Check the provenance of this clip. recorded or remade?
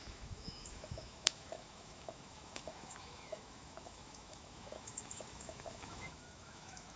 remade